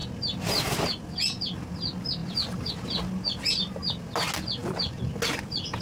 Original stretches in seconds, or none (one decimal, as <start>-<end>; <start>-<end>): 0.0-2.2; 2.7-4.6; 5.1-5.8